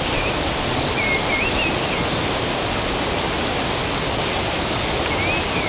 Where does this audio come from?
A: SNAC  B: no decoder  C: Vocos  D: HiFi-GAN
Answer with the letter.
B